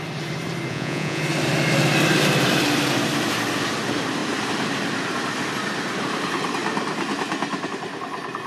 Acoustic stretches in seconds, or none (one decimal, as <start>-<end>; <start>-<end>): 0.0-0.7; 1.2-8.5